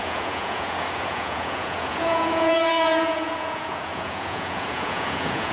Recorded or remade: remade